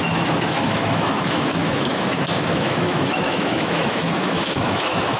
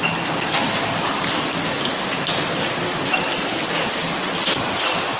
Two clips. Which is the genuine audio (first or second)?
second